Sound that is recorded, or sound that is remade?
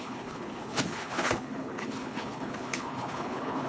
remade